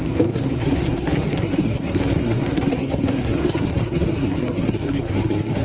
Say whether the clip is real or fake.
fake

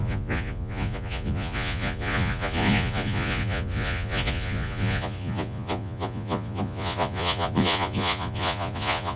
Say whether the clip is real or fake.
fake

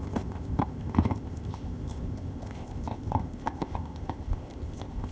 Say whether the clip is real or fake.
fake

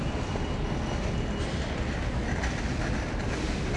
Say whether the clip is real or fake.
real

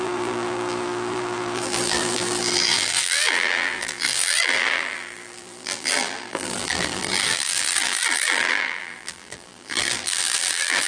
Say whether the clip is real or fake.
fake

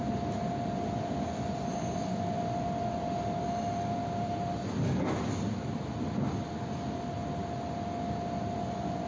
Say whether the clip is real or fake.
real